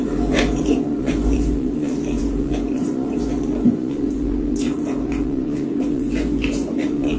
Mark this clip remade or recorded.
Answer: remade